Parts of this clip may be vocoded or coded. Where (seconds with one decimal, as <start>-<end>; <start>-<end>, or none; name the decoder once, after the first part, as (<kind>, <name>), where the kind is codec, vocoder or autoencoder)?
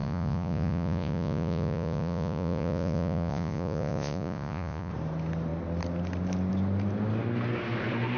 0.0-4.9 (vocoder, Vocos)